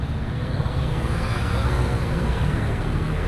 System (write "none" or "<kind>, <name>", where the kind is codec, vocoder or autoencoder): codec, SNAC